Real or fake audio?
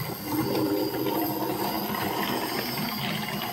real